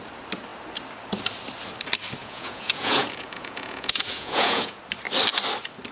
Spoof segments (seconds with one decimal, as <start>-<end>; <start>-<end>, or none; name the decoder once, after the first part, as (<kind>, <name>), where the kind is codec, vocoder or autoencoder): 2.2-4.8 (vocoder, Vocos)